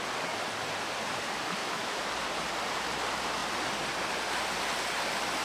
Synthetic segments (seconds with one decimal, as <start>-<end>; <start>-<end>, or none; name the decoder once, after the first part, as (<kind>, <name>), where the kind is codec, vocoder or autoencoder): 1.6-2.1 (autoencoder, DAC-VAE)